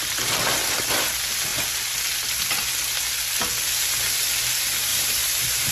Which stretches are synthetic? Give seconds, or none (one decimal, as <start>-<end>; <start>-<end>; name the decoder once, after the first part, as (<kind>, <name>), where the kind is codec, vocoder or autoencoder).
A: none